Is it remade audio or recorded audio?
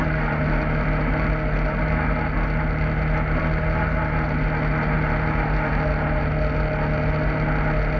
recorded